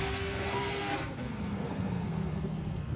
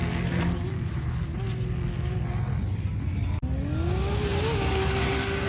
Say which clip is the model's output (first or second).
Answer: first